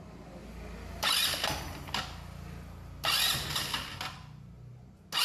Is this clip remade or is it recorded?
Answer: recorded